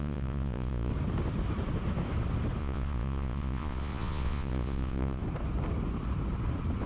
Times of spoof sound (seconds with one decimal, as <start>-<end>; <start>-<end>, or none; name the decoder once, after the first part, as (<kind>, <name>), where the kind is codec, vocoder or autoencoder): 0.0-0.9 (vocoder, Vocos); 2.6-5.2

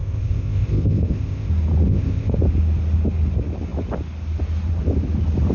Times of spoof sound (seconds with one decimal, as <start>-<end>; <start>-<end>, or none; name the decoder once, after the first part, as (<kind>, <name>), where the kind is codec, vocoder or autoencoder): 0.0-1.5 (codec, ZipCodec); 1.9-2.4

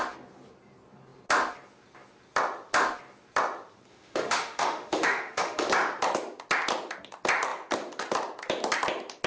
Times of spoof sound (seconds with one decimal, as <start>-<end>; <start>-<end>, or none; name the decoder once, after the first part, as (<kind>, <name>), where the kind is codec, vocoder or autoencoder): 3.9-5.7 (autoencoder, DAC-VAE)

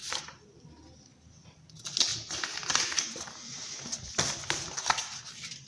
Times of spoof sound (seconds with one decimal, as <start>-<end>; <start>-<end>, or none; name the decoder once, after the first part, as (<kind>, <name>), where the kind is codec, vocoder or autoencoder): none